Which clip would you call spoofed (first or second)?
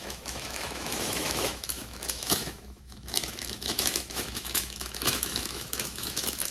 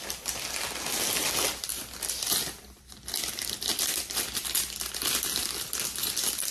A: first